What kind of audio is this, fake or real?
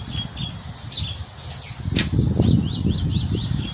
real